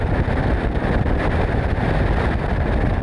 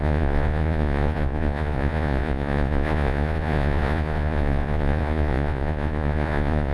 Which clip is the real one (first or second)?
first